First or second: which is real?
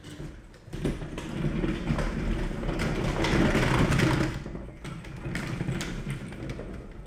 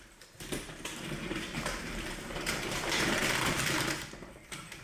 first